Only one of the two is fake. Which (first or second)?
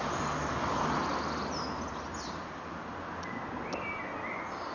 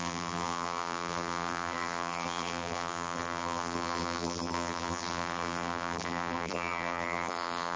second